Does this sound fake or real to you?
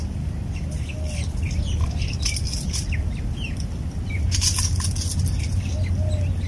real